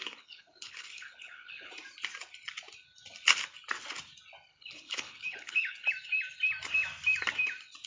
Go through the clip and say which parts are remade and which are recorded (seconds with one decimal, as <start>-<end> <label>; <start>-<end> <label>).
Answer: 0.0-1.7 remade; 1.7-4.5 recorded; 4.5-5.9 remade; 5.9-7.9 recorded